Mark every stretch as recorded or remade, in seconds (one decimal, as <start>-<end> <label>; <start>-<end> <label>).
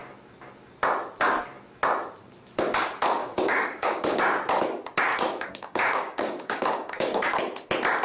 0.0-3.2 recorded; 3.2-4.2 remade; 4.2-5.1 recorded; 5.1-7.4 remade; 7.4-8.0 recorded